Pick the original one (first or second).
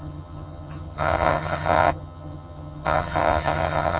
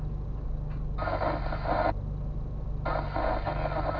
second